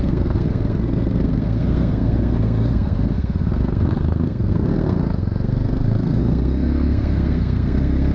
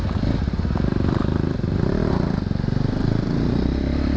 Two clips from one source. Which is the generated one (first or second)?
first